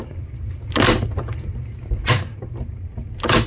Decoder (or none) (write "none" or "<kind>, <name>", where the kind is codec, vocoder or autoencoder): none